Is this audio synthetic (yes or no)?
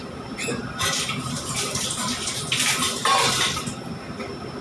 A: yes